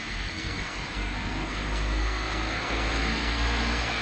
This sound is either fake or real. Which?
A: fake